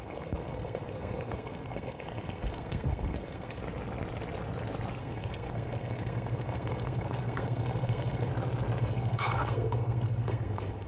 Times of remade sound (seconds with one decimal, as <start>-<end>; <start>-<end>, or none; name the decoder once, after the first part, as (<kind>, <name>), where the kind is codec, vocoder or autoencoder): 0.0-3.6 (codec, SNAC); 5.0-8.3; 8.8-10.9